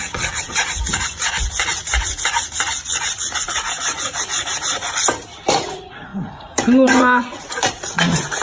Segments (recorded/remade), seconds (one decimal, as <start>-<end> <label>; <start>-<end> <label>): 0.0-4.3 remade; 4.3-5.6 recorded; 5.6-8.4 remade